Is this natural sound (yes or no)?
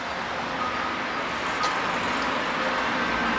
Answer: yes